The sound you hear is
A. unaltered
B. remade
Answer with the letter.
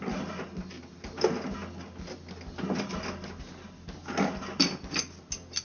A